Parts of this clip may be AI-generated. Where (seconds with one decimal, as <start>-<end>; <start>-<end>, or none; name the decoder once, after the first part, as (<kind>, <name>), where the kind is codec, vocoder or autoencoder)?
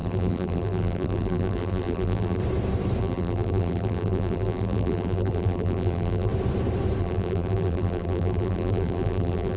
0.0-2.4 (vocoder, BigVGAN v2); 3.0-6.3; 7.0-9.6